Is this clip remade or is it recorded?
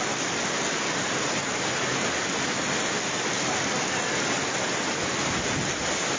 recorded